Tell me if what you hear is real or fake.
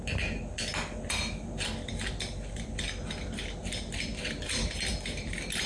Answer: real